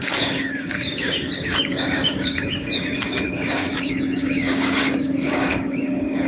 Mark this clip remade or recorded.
remade